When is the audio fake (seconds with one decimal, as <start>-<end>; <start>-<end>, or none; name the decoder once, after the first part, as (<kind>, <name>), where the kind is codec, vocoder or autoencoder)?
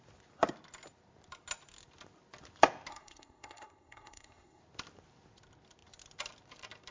2.9-4.6 (codec, SNAC)